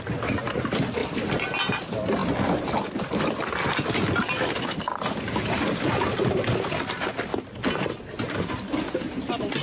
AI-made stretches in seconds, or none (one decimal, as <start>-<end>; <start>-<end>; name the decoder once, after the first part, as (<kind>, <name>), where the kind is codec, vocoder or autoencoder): none